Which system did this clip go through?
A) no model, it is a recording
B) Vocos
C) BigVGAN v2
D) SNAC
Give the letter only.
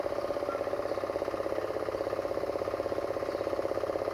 A